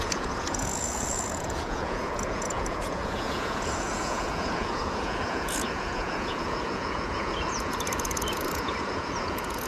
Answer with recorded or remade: remade